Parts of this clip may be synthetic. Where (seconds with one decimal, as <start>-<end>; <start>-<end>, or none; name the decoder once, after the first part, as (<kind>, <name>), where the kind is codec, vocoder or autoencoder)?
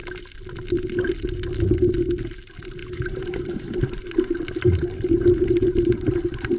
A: 2.8-6.6 (vocoder, BigVGAN v2)